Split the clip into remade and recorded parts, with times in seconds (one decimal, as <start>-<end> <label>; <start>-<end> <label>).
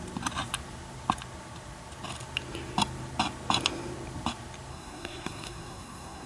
0.0-4.7 recorded; 4.7-6.3 remade